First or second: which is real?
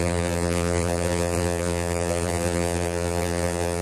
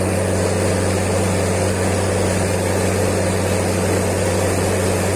second